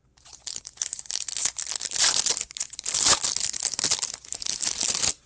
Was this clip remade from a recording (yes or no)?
no